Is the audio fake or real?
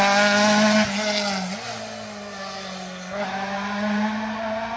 real